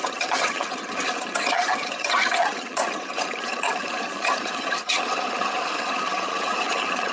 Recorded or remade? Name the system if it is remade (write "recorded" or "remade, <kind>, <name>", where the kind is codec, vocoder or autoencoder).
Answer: remade, vocoder, HiFi-GAN